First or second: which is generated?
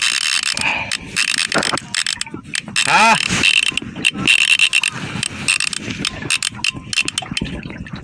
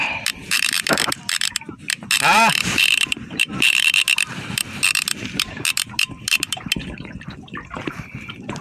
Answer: second